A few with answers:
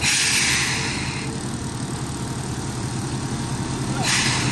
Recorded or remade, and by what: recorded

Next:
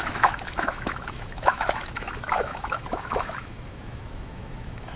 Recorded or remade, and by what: remade, autoencoder, DAC-VAE